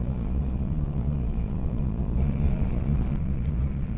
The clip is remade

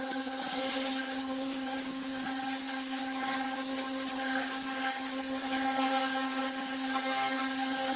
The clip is remade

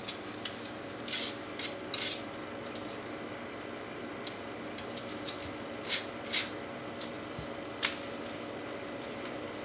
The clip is recorded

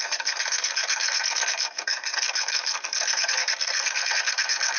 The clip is remade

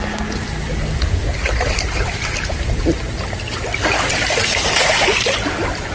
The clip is recorded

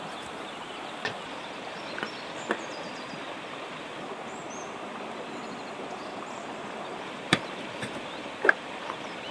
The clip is remade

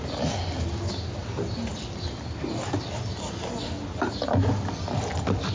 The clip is recorded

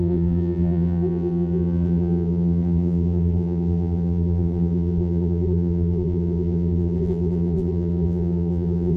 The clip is remade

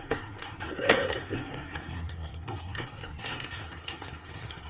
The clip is remade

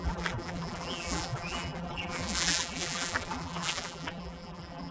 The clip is remade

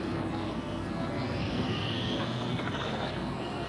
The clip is remade